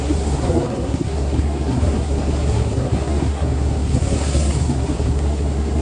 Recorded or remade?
remade